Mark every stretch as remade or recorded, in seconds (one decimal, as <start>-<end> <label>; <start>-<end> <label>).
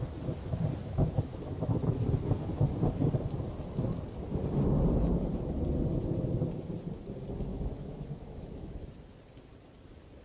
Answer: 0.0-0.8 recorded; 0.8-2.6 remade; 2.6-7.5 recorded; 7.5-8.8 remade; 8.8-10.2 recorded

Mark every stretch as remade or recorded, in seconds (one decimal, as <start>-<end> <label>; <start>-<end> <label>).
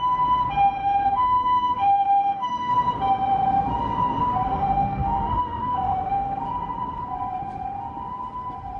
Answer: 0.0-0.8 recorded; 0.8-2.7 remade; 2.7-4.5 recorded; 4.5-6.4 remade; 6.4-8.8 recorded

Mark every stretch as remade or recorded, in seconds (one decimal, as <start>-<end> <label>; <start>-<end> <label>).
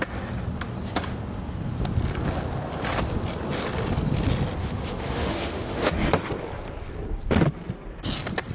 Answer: 0.0-4.6 recorded; 4.6-6.1 remade; 6.1-8.5 recorded